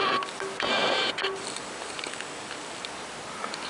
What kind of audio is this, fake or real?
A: real